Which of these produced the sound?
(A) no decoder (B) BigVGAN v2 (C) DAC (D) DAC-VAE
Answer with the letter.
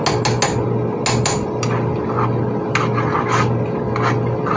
A